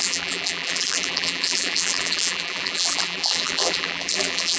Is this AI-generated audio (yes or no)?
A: yes